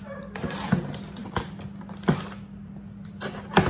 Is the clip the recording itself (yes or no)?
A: yes